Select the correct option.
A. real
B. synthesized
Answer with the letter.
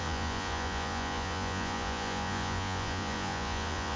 B